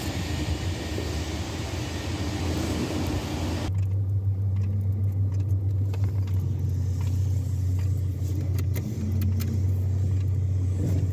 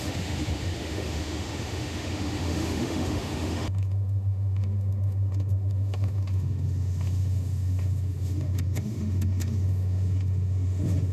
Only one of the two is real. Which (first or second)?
first